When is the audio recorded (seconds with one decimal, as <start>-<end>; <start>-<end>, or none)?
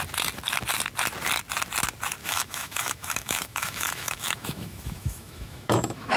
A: 0.0-2.2